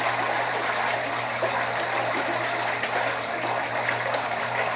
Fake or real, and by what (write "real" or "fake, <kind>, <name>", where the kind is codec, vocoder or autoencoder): real